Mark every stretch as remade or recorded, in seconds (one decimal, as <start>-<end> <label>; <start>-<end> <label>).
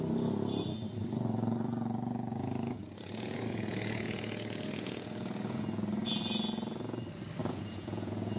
0.0-2.3 recorded; 2.3-7.0 remade; 7.0-7.4 recorded; 7.4-8.4 remade